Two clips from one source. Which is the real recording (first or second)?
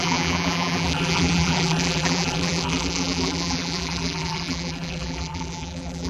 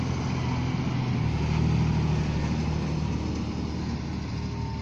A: second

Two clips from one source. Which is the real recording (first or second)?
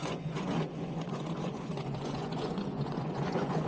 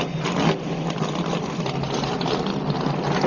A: second